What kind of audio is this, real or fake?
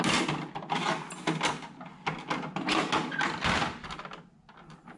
real